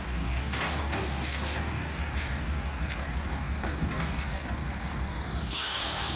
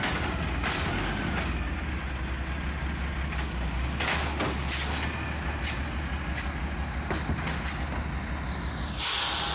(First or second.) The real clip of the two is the second